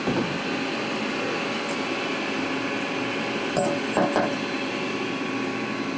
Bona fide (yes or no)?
yes